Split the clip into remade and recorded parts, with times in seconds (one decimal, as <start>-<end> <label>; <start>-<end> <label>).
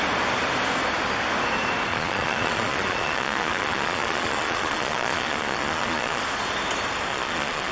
0.0-1.9 recorded; 1.9-6.2 remade; 6.2-7.1 recorded; 7.1-7.7 remade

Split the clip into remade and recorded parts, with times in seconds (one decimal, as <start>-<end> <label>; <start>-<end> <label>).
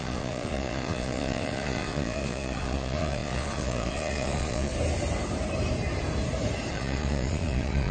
0.0-4.7 remade; 4.7-6.7 recorded; 6.7-7.9 remade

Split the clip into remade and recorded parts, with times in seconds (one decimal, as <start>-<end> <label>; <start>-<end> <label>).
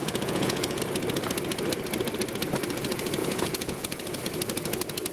0.0-0.8 remade; 0.8-3.2 recorded; 3.2-4.2 remade; 4.2-5.1 recorded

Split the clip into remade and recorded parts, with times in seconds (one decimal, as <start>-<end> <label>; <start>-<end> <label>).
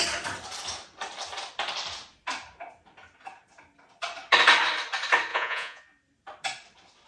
0.0-5.3 recorded; 5.3-5.8 remade; 5.8-7.1 recorded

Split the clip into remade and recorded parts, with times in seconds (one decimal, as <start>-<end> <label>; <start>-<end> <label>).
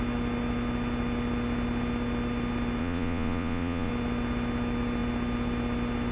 0.0-2.8 recorded; 2.8-3.9 remade; 3.9-6.1 recorded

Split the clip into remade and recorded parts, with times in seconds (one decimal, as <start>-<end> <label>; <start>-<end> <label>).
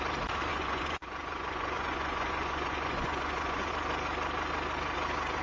0.0-0.5 recorded; 0.5-3.7 remade; 3.7-5.4 recorded